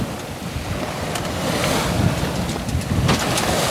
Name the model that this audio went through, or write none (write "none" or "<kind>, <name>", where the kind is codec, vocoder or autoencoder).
none